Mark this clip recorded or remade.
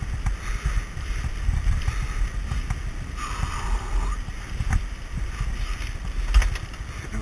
recorded